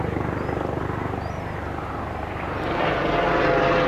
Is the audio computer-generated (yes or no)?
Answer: no